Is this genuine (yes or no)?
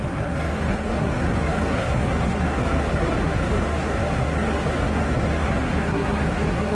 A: no